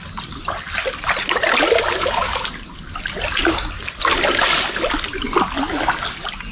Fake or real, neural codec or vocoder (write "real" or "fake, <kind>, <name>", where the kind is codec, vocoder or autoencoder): real